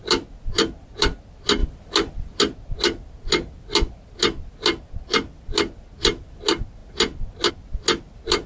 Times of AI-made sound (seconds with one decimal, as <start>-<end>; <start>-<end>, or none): none